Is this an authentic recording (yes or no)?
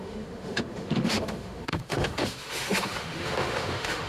no